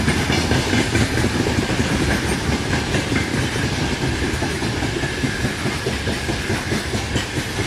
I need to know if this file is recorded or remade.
recorded